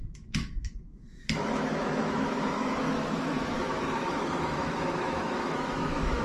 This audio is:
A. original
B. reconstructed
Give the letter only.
B